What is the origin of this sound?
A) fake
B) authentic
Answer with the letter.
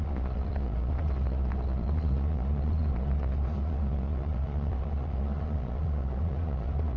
A